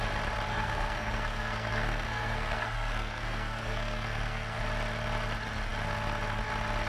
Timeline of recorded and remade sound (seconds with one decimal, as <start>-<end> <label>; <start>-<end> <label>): 0.0-0.5 recorded; 0.5-4.6 remade; 4.6-6.9 recorded